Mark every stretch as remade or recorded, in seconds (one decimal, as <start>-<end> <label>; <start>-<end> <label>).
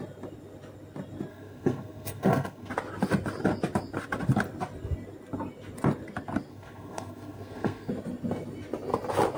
0.0-1.3 recorded; 1.3-2.7 remade; 2.7-6.5 recorded; 6.5-7.9 remade; 7.9-9.4 recorded